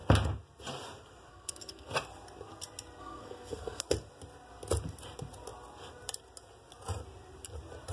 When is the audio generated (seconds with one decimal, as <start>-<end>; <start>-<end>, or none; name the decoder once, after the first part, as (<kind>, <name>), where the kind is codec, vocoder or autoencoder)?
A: 1.3-1.9 (codec, SNAC); 3.0-3.8